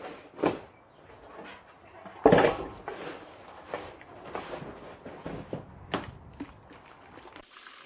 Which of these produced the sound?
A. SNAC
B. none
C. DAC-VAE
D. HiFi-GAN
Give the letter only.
B